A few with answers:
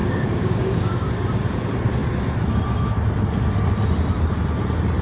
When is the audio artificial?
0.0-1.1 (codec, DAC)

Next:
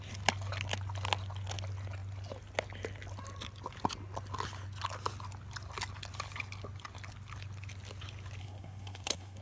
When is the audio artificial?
8.4-9.4 (codec, SNAC)